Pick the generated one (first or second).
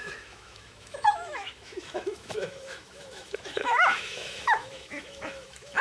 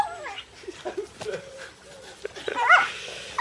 first